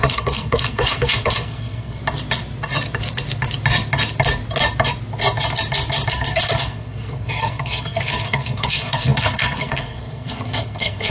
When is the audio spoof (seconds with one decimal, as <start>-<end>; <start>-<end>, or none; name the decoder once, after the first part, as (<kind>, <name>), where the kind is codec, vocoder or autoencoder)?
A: 0.0-2.0 (codec, SNAC); 6.1-11.1